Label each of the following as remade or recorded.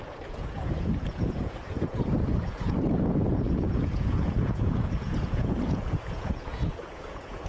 remade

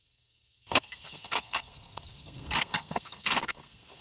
remade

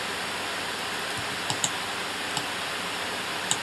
recorded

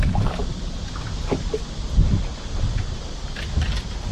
recorded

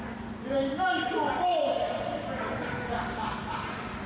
recorded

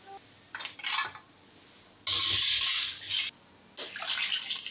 recorded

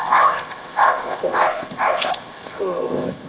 remade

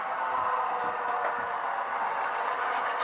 recorded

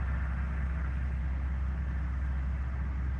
recorded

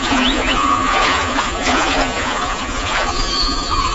remade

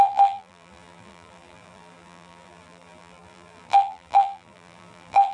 remade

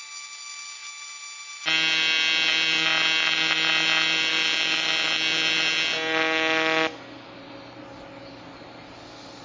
recorded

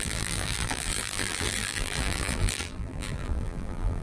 remade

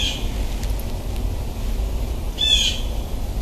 recorded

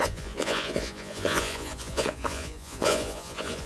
remade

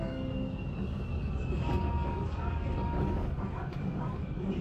remade